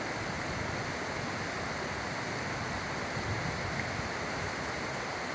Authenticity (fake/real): real